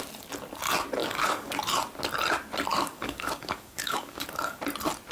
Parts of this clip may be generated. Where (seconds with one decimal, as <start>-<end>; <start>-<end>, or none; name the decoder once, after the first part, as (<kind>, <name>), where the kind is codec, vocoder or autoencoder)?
1.0-1.6 (codec, DAC); 2.7-4.6